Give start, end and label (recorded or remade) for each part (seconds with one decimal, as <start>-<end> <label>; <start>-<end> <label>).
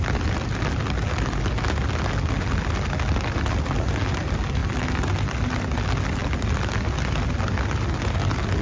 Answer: 0.0-8.6 recorded